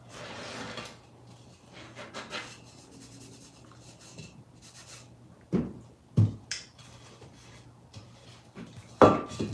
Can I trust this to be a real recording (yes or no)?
yes